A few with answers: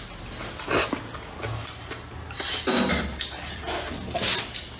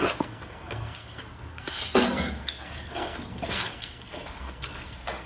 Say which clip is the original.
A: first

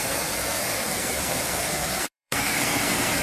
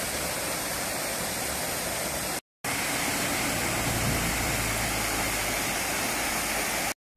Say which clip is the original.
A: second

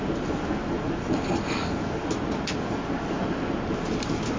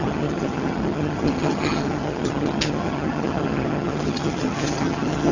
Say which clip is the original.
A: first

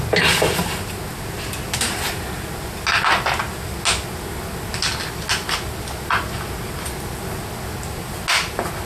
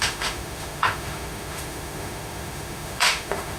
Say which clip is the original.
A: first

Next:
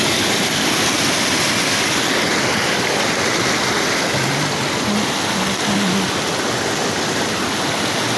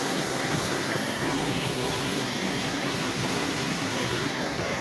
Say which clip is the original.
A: first